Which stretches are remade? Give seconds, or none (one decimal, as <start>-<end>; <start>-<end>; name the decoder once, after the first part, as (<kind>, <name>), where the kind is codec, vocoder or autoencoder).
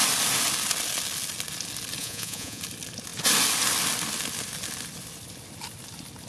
2.0-2.6 (vocoder, Vocos)